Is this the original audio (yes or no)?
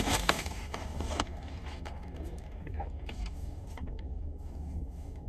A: no